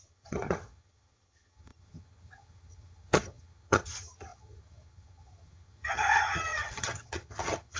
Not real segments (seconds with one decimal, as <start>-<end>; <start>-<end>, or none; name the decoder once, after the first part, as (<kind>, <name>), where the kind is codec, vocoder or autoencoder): 0.0-7.8 (vocoder, HiFi-GAN)